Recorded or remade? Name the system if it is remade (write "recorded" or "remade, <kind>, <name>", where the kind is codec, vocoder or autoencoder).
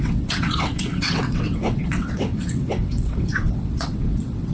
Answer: remade, vocoder, WaveNeXt